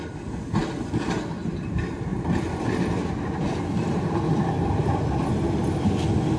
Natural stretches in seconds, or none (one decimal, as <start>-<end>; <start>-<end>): 0.0-6.4